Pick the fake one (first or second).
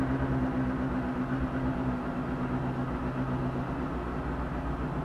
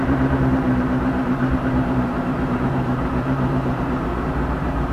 second